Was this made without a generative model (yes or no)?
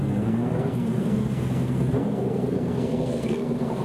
no